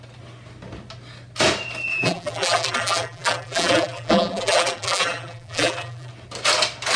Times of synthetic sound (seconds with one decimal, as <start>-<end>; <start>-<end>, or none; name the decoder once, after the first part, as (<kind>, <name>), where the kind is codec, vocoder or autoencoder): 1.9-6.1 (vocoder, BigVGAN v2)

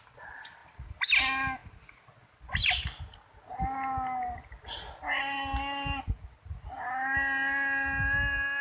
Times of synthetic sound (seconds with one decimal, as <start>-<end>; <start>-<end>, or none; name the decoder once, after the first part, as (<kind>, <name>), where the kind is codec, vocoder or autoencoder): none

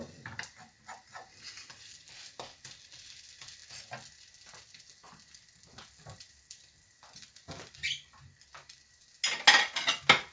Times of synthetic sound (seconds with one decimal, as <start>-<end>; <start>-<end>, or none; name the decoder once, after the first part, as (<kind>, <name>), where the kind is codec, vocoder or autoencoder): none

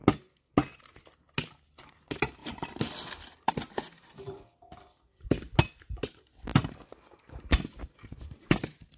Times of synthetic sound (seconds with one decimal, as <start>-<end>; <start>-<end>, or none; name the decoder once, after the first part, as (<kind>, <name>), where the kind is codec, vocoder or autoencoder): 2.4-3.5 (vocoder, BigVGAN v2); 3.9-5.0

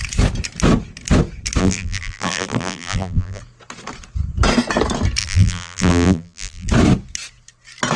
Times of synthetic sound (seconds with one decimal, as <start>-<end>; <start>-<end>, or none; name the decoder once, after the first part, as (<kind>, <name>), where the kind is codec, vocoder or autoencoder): 1.6-3.4 (vocoder, BigVGAN v2); 5.2-6.7